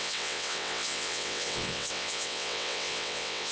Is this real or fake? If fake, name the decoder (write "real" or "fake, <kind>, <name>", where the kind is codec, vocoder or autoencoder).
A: fake, vocoder, WaveNeXt